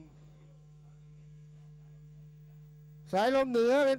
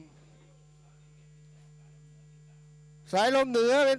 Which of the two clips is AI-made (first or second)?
first